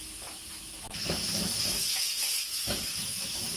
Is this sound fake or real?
fake